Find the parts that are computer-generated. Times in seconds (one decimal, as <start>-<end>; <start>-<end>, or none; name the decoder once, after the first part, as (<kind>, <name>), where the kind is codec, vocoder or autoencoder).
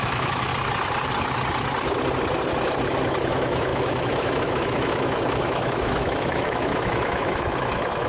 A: 0.0-0.5 (autoencoder, DAC-VAE); 3.3-8.1